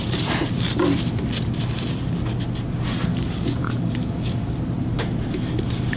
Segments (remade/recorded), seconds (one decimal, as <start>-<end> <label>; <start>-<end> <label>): 0.0-3.1 recorded; 3.1-4.5 remade; 4.5-6.0 recorded